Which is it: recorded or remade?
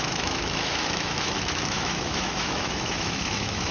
remade